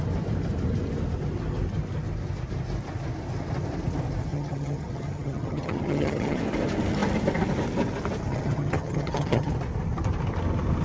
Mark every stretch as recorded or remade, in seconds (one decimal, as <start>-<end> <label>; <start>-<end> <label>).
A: 0.0-4.3 recorded; 4.3-6.4 remade; 6.4-8.3 recorded; 8.3-9.5 remade; 9.5-10.8 recorded